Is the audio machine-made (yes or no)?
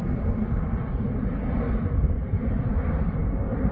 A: no